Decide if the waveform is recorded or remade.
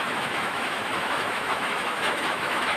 remade